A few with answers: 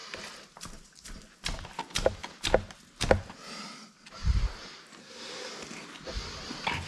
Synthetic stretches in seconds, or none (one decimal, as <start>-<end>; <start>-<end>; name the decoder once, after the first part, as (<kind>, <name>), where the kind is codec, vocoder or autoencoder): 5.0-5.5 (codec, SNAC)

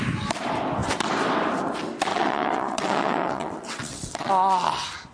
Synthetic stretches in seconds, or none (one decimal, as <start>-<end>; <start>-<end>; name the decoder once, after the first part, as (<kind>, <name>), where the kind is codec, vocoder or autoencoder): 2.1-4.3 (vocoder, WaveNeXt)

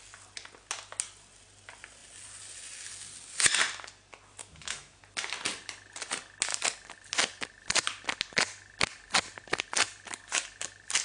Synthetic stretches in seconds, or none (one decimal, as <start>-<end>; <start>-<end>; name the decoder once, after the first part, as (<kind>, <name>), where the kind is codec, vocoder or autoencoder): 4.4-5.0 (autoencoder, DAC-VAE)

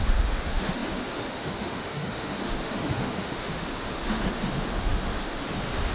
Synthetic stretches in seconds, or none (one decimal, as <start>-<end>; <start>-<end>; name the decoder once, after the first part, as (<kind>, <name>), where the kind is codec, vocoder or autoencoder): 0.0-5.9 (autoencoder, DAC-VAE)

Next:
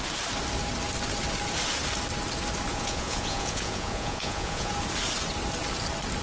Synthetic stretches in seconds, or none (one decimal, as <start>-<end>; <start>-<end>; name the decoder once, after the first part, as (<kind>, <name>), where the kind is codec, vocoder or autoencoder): 2.7-4.7 (vocoder, Vocos)